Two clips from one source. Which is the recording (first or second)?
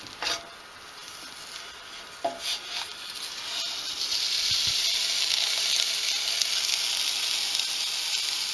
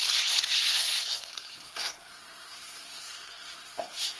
first